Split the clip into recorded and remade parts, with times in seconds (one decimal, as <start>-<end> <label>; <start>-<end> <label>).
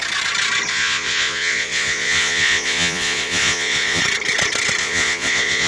0.0-0.7 recorded; 0.7-4.0 remade; 4.0-4.8 recorded; 4.8-5.7 remade